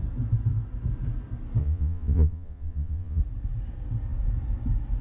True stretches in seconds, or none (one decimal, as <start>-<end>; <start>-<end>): 0.0-1.6; 3.2-5.0